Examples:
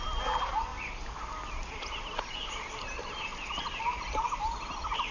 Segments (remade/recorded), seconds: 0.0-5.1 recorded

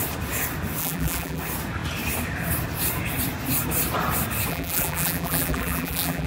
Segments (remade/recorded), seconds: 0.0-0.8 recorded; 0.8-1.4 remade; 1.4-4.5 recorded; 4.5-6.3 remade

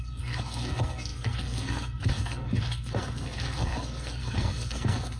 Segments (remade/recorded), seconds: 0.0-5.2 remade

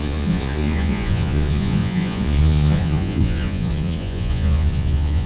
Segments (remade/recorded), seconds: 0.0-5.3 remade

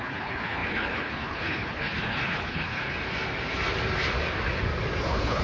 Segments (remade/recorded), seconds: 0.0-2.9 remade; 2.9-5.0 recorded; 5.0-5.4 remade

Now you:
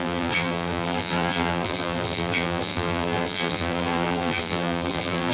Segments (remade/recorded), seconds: 0.0-5.3 remade

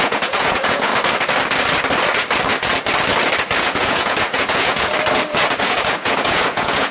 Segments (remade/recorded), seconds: 0.0-0.9 remade; 0.9-3.6 recorded; 3.6-4.9 remade; 4.9-5.6 recorded; 5.6-6.9 remade

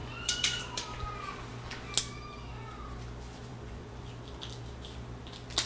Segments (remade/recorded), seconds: 0.0-0.6 remade; 0.6-3.5 recorded; 3.5-4.1 remade; 4.1-5.7 recorded